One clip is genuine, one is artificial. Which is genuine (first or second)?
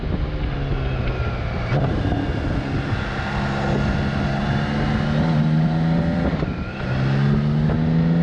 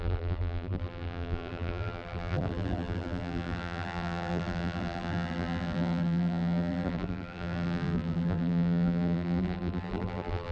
first